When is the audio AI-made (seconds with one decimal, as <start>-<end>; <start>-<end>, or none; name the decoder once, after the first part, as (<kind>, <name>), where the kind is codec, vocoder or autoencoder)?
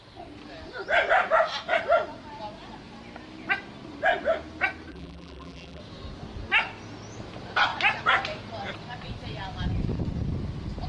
4.9-5.8 (vocoder, BigVGAN v2)